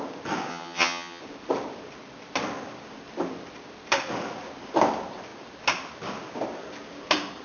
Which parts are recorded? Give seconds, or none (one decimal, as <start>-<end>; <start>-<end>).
0.0-0.5; 1.2-7.4